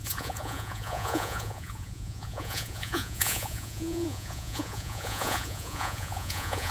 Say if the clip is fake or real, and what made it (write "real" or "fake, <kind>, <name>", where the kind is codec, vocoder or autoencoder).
fake, vocoder, Vocos